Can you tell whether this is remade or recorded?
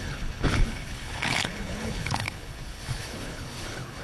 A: remade